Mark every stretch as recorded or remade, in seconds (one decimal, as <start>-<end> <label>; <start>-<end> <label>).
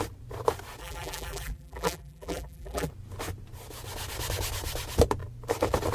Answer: 0.0-0.8 recorded; 0.8-2.9 remade; 2.9-5.9 recorded